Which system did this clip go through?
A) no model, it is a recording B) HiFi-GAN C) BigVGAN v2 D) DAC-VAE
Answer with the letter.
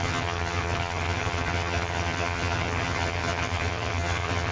B